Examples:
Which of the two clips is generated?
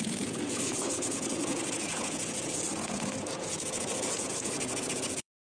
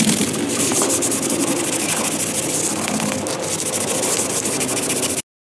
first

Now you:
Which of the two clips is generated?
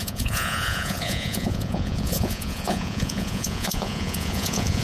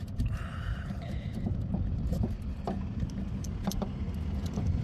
first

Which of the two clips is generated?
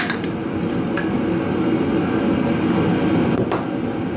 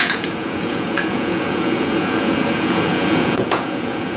second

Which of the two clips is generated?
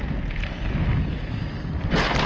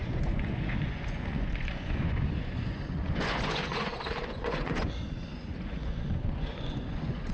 second